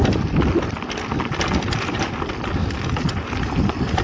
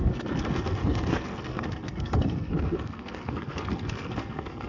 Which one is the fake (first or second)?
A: second